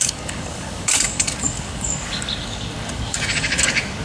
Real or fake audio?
fake